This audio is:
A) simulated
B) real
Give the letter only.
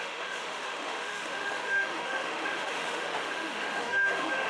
A